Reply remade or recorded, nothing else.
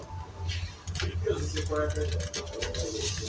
recorded